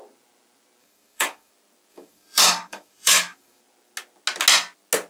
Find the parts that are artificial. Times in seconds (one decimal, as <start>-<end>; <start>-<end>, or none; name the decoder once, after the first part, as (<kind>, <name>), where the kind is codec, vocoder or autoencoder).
0.8-1.5 (codec, DAC); 1.9-3.6